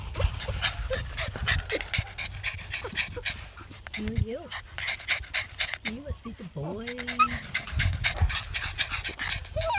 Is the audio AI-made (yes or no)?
no